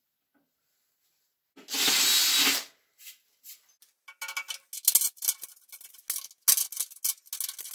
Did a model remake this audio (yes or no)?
no